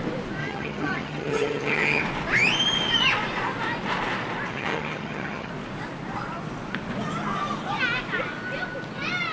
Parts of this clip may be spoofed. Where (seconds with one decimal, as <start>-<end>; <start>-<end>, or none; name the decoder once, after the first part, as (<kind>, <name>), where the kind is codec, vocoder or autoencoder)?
0.4-2.0 (vocoder, HiFi-GAN); 4.5-5.5